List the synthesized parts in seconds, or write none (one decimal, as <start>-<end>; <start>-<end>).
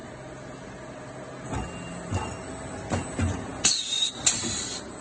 none